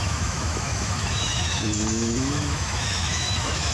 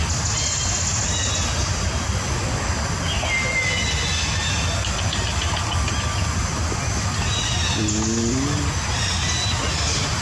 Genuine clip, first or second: second